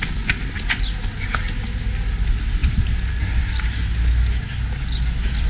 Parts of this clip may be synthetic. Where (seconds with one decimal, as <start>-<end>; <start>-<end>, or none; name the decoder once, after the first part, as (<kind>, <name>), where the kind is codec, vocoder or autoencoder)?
none